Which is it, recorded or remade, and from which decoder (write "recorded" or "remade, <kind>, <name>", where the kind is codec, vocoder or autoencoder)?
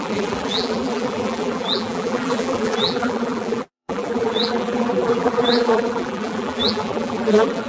remade, vocoder, BigVGAN v2